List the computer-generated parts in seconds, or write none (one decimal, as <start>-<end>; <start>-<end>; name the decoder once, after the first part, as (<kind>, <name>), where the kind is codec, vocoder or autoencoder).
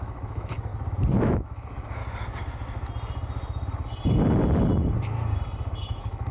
0.0-0.7 (autoencoder, DAC-VAE); 1.2-2.0; 5.8-6.3